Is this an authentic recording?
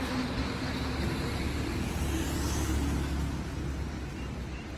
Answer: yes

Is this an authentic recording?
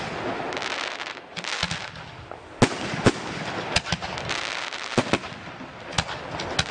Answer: yes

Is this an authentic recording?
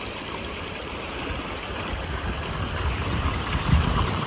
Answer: no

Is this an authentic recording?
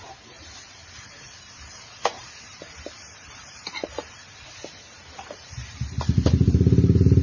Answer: no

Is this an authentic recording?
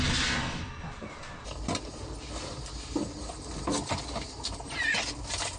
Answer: yes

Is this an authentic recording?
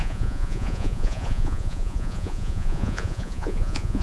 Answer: no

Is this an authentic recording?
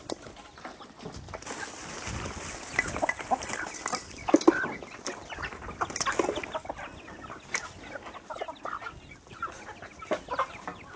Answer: yes